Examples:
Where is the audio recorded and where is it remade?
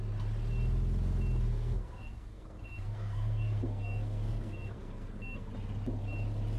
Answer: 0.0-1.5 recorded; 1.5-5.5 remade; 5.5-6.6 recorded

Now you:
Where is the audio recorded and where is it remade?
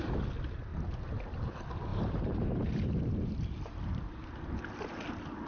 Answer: 0.0-0.7 recorded; 0.7-1.5 remade; 1.5-1.9 recorded; 1.9-4.6 remade; 4.6-5.5 recorded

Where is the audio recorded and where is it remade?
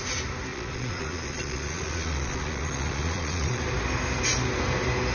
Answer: 0.0-0.5 recorded; 0.5-3.6 remade; 3.6-5.1 recorded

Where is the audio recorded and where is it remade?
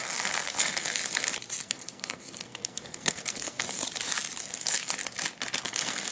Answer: 0.0-1.0 remade; 1.0-1.6 recorded; 1.6-3.8 remade; 3.8-4.4 recorded; 4.4-5.0 remade; 5.0-5.6 recorded; 5.6-6.1 remade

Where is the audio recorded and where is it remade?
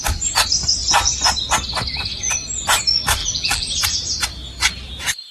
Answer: 0.0-3.2 recorded; 3.2-3.7 remade; 3.7-5.3 recorded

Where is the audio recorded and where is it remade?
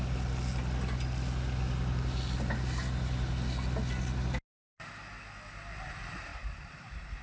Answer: 0.0-6.3 recorded; 6.3-7.2 remade